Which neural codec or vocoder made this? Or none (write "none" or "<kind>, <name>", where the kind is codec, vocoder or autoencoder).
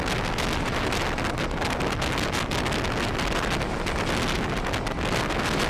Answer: none